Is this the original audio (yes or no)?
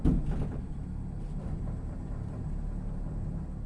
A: yes